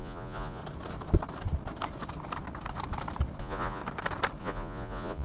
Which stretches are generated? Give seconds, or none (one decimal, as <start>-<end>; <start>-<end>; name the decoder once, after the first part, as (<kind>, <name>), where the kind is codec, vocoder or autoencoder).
0.0-0.6 (vocoder, Vocos); 3.4-3.8; 4.4-5.2